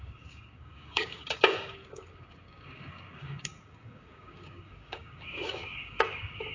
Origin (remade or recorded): remade